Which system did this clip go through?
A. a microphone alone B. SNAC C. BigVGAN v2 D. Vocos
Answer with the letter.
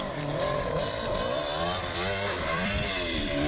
C